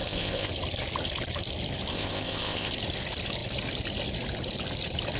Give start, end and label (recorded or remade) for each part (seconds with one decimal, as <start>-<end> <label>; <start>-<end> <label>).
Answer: 0.0-0.5 remade; 0.5-1.9 recorded; 1.9-2.7 remade; 2.7-5.2 recorded